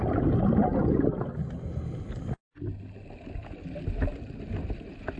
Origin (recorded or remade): recorded